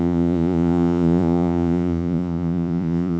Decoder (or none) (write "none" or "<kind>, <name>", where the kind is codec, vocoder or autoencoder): vocoder, Vocos